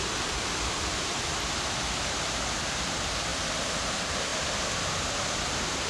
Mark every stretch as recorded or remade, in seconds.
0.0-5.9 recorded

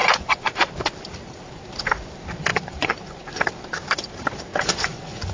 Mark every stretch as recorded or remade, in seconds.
0.0-0.6 remade; 0.6-2.5 recorded; 2.5-3.4 remade; 3.4-4.5 recorded; 4.5-5.3 remade

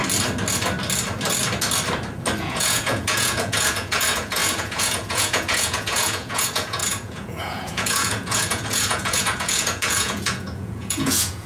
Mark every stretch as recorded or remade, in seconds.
0.0-2.4 recorded; 2.4-11.5 remade

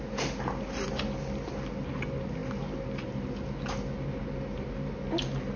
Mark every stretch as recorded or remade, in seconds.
0.0-5.6 recorded

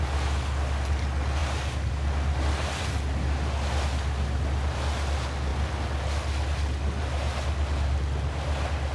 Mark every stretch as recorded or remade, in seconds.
0.0-8.9 recorded